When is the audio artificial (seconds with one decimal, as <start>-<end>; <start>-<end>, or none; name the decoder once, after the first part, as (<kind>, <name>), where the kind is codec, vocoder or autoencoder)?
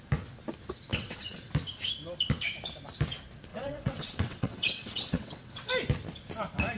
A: 0.9-1.5 (vocoder, WaveNeXt); 3.5-5.7